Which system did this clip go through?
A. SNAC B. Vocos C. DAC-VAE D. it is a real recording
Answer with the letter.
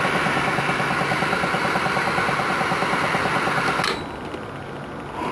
D